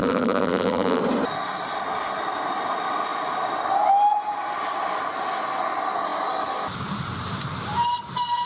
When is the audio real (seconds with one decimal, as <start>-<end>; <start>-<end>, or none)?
1.0-8.5